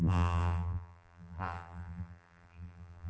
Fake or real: fake